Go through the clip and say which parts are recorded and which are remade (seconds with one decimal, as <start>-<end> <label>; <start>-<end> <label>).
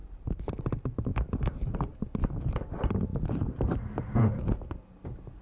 0.0-5.4 recorded